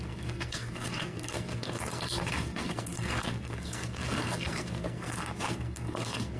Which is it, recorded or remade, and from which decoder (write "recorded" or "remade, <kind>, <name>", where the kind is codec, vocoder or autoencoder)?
remade, codec, SNAC